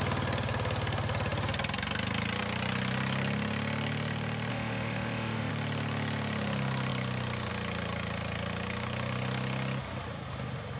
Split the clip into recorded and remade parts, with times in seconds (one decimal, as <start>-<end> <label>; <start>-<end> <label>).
0.0-4.5 recorded; 4.5-5.5 remade; 5.5-10.8 recorded